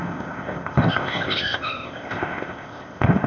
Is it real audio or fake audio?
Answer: fake